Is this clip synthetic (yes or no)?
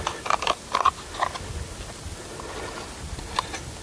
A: no